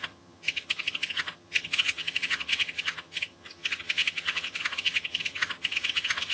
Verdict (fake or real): fake